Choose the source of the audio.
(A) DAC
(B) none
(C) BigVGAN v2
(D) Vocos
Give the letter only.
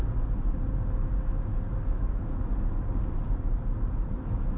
B